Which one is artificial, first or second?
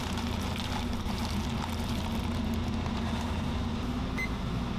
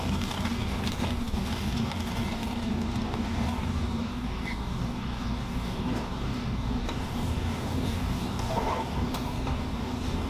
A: second